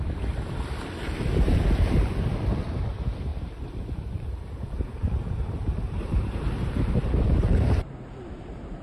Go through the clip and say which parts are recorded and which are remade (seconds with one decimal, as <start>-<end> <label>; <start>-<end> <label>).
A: 0.0-8.8 remade